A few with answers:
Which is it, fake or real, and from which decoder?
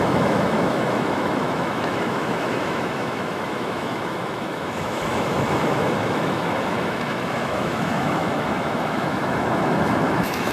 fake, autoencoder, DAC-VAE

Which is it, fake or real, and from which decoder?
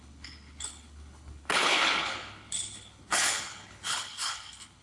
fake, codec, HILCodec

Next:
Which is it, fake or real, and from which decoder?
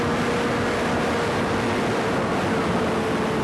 real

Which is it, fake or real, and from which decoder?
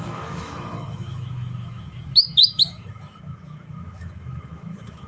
fake, autoencoder, DAC-VAE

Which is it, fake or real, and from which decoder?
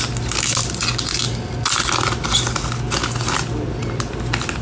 real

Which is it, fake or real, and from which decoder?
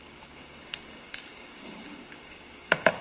fake, codec, DAC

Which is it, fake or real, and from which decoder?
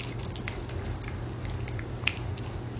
real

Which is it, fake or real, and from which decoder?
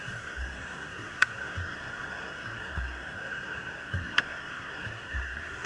fake, codec, SNAC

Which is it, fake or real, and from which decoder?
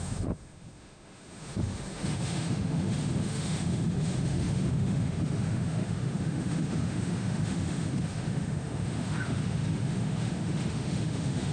fake, autoencoder, DAC-VAE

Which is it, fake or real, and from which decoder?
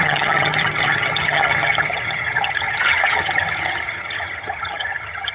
fake, vocoder, HiFi-GAN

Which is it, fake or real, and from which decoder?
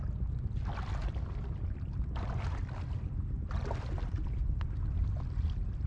real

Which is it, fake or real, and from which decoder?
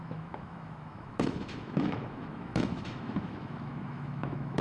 fake, autoencoder, DAC-VAE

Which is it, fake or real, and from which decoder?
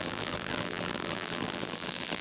fake, vocoder, BigVGAN v2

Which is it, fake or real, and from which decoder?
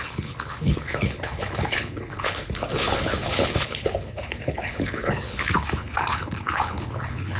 fake, codec, HILCodec